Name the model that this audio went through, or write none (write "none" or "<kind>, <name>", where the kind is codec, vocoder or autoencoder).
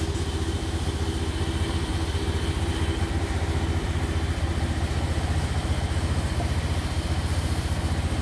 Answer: none